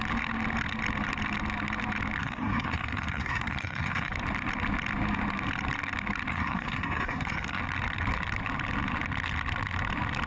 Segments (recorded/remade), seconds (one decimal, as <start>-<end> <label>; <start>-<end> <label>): 0.0-2.2 recorded; 2.2-4.1 remade; 4.1-6.3 recorded; 6.3-7.6 remade; 7.6-10.3 recorded